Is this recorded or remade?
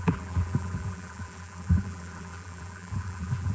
remade